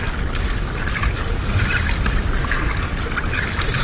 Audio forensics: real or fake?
real